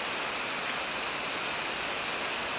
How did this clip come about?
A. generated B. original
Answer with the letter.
B